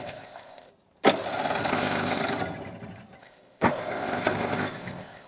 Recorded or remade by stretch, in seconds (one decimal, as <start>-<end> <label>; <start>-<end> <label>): 0.0-0.7 remade; 0.7-1.7 recorded; 1.7-2.2 remade; 2.2-3.2 recorded; 3.2-5.3 remade